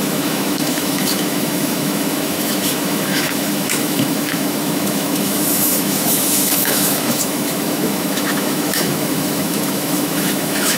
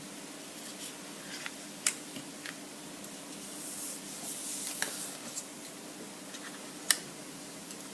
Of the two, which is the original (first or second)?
second